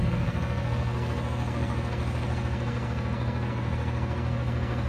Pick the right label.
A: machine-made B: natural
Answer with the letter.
A